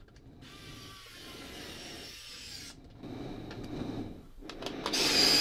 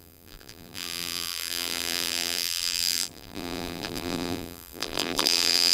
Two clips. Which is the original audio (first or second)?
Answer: first